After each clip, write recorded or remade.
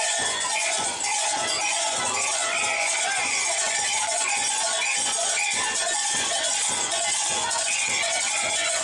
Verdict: remade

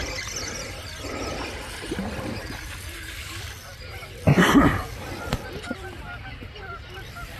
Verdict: recorded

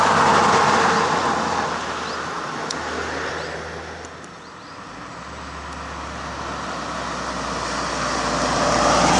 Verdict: recorded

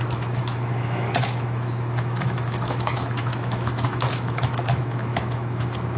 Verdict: remade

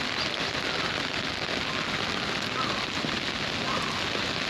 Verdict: recorded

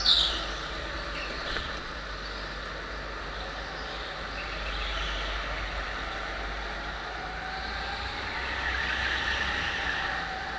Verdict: recorded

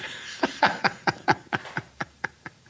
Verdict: remade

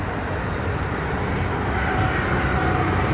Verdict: recorded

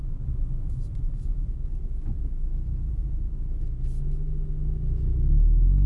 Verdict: recorded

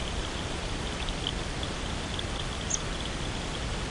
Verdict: recorded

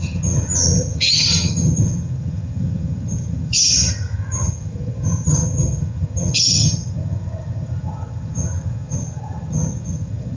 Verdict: remade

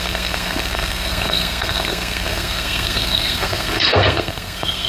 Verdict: remade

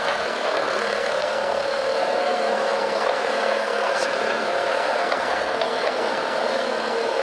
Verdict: remade